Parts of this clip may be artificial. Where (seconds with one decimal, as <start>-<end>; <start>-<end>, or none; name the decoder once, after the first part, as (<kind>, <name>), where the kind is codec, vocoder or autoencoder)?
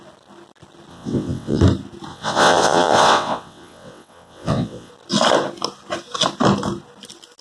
0.9-1.6 (vocoder, WaveNeXt); 2.1-4.9